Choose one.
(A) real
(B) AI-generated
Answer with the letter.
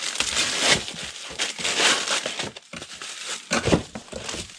B